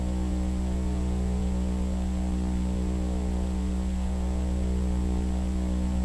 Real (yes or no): no